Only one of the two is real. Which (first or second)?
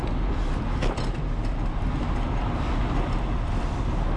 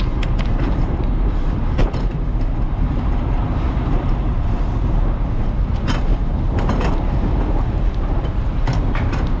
first